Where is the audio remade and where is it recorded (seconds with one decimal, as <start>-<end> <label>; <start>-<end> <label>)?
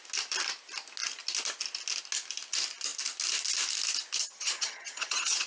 0.0-4.2 recorded; 4.2-5.5 remade